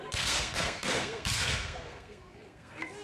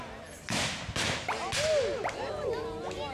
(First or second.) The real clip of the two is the second